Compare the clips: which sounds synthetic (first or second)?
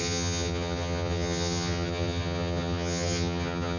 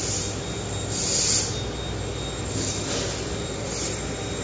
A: first